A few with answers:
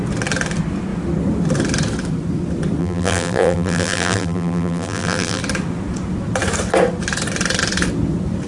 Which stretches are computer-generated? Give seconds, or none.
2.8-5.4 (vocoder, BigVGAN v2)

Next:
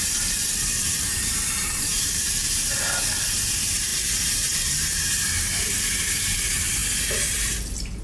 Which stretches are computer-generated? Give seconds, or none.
0.0-6.8 (vocoder, BigVGAN v2)